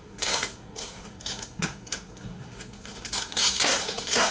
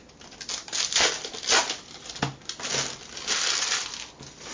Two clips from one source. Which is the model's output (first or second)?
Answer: first